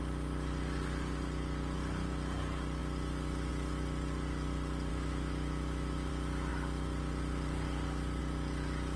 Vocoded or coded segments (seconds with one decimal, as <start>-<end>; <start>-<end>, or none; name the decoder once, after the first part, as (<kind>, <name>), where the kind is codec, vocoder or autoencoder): 4.9-6.1 (autoencoder, DAC-VAE)